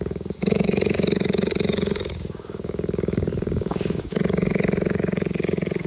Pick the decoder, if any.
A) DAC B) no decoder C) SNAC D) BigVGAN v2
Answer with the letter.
A